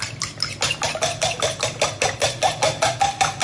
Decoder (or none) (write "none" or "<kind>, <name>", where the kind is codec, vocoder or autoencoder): none